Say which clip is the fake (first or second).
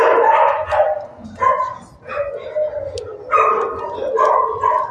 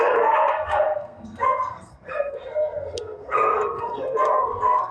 second